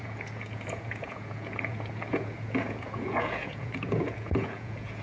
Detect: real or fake fake